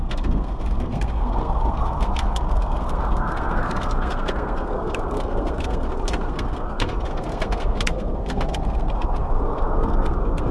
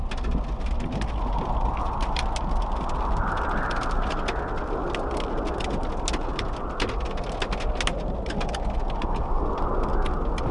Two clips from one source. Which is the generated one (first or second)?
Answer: first